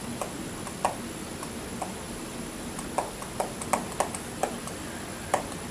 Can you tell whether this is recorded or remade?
recorded